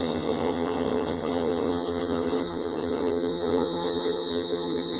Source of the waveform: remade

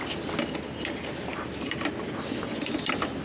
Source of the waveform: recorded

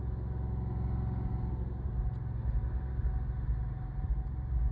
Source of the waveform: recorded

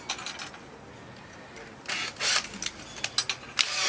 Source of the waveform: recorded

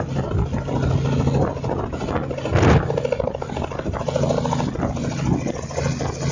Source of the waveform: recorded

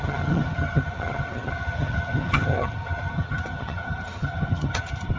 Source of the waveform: remade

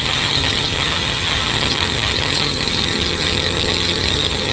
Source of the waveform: remade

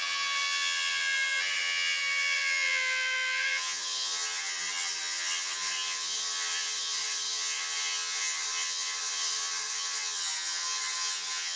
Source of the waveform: remade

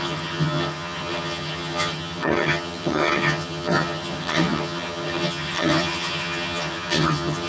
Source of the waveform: remade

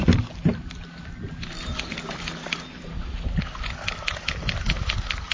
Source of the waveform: recorded